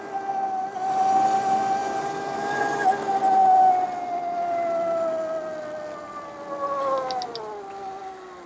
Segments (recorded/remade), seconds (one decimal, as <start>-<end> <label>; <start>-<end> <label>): 0.0-8.5 recorded